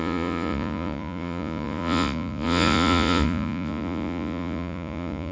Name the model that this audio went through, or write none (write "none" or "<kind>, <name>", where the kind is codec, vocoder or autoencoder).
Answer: vocoder, Vocos